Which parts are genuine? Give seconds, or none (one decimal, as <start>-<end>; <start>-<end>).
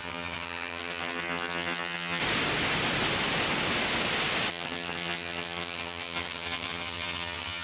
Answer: 2.2-4.5